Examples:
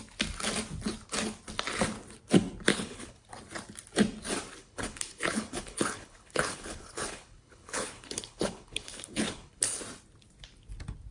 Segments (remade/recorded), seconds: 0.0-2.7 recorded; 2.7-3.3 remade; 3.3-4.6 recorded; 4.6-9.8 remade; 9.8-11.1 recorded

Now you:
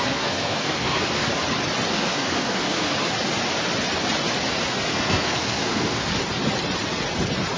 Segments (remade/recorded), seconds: 0.0-1.2 remade; 1.2-1.9 recorded; 1.9-2.9 remade; 2.9-4.9 recorded; 4.9-6.1 remade; 6.1-7.6 recorded

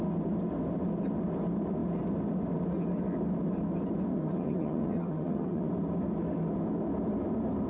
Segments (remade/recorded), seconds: 0.0-4.1 recorded; 4.1-5.7 remade; 5.7-7.7 recorded

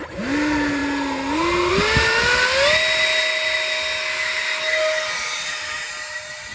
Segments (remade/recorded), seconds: 0.0-6.5 recorded

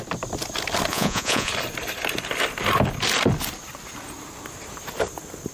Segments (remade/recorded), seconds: 0.0-0.9 recorded; 0.9-1.5 remade; 1.5-5.5 recorded

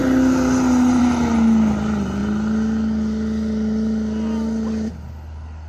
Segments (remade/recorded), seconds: 0.0-5.7 recorded

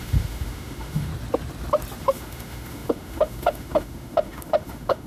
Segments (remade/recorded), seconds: 0.0-1.1 remade; 1.1-2.0 recorded; 2.0-5.1 remade